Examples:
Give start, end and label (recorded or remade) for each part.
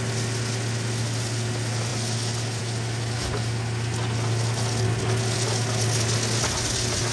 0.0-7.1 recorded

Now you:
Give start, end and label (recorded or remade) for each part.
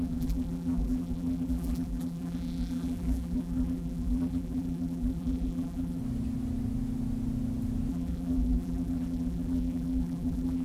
0.0-6.0 remade; 6.0-7.9 recorded; 7.9-10.6 remade